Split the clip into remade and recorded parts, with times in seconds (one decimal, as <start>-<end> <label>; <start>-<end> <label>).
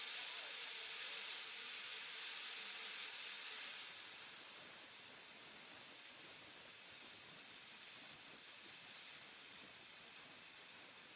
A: 0.0-11.2 remade